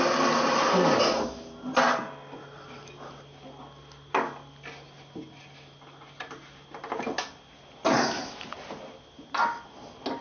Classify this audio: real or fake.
real